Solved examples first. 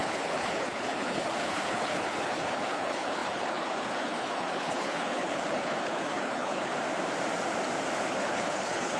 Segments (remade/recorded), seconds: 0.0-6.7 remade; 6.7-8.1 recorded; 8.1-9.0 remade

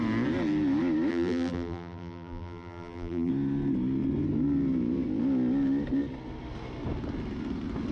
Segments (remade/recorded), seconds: 0.0-1.1 recorded; 1.1-3.3 remade; 3.3-7.9 recorded

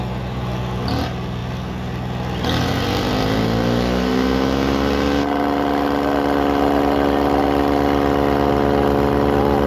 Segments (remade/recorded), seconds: 0.0-9.7 recorded

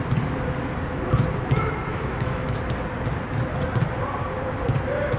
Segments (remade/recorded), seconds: 0.0-1.9 recorded; 1.9-2.6 remade; 2.6-5.2 recorded

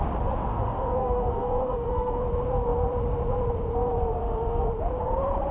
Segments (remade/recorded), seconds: 0.0-0.5 recorded; 0.5-2.2 remade; 2.2-4.2 recorded; 4.2-4.7 remade; 4.7-5.5 recorded

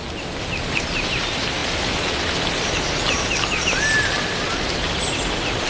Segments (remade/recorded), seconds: 0.0-5.7 recorded

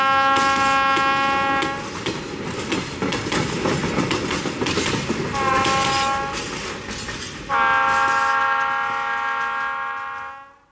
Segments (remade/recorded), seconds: 0.0-10.7 recorded

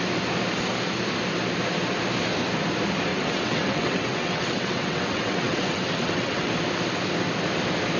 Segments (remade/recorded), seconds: 0.0-3.1 recorded; 3.1-6.5 remade; 6.5-8.0 recorded